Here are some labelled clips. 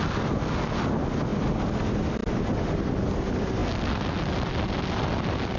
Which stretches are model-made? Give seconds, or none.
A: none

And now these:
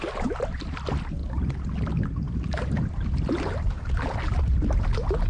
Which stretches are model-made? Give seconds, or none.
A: 1.2-4.3 (vocoder, BigVGAN v2)